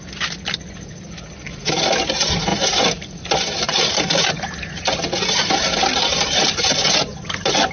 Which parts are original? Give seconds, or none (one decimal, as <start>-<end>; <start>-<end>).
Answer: 0.0-2.5; 4.3-5.8; 6.6-7.7